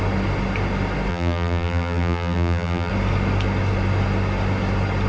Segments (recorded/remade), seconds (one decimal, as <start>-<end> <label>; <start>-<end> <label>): 0.0-1.1 recorded; 1.1-2.9 remade; 2.9-5.1 recorded